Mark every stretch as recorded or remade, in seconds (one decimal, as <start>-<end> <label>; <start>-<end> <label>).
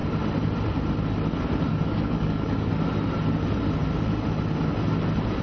0.0-1.7 recorded; 1.7-2.7 remade; 2.7-5.4 recorded